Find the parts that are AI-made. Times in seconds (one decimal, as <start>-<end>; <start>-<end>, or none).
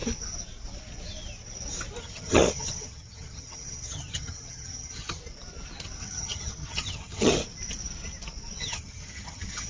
2.0-5.2; 6.0-7.4; 8.6-9.7